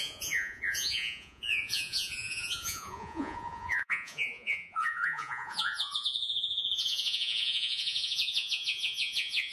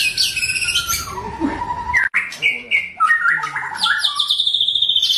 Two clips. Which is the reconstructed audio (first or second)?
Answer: first